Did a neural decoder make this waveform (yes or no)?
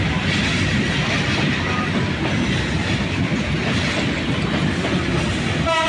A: no